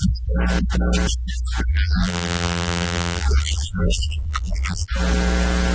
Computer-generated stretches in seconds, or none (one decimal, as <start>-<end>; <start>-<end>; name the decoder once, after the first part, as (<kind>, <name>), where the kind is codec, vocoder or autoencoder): 1.7-4.9 (vocoder, BigVGAN v2)